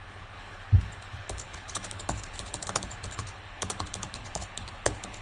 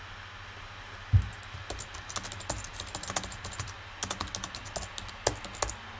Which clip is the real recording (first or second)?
second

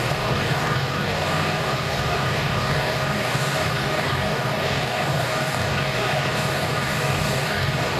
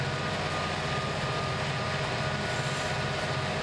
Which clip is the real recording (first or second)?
second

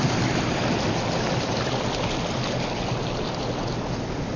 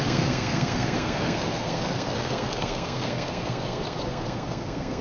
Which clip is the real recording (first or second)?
first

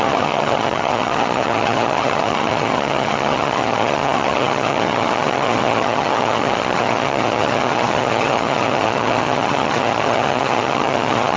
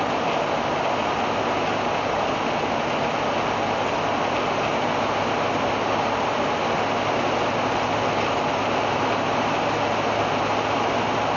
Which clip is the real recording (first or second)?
second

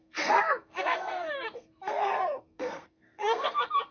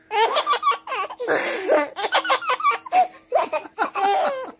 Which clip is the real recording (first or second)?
second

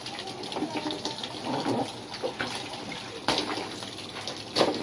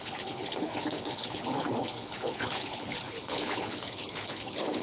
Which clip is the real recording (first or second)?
first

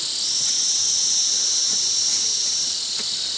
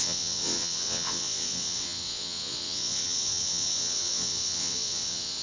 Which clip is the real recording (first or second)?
first